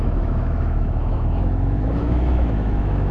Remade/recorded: remade